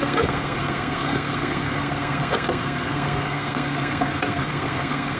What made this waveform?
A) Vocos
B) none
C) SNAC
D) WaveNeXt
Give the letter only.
C